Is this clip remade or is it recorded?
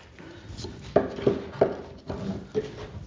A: recorded